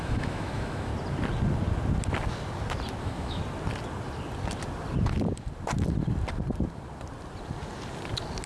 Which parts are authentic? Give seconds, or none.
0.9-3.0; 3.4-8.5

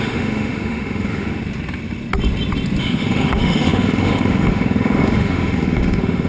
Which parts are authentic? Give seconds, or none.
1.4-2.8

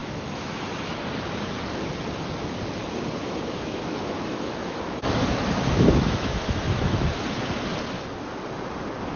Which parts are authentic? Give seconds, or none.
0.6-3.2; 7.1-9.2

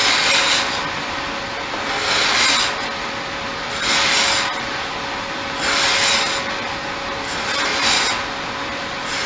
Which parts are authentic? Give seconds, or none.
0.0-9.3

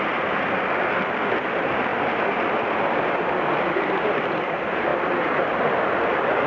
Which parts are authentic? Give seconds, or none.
0.0-6.5

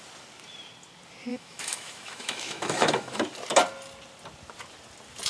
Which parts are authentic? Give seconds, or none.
0.0-1.3; 3.2-5.3

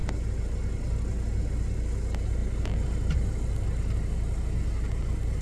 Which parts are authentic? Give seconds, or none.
0.0-5.4